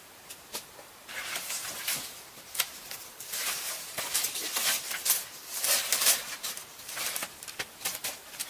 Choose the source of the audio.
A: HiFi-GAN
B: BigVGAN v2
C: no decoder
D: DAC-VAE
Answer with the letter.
B